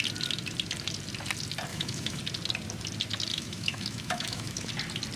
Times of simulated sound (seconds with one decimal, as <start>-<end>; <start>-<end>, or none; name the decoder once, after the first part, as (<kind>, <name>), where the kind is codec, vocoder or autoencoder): 1.7-2.2 (autoencoder, DAC-VAE); 3.3-4.7